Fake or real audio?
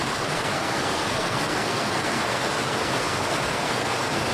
fake